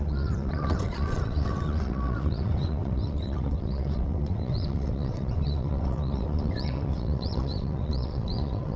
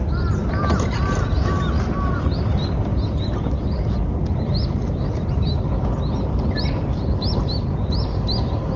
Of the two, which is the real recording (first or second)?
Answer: second